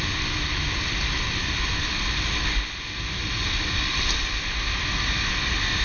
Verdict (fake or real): real